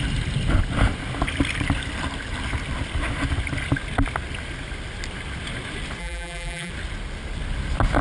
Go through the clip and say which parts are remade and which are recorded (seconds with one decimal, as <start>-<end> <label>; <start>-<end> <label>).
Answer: 0.0-6.0 recorded; 6.0-6.7 remade; 6.7-8.0 recorded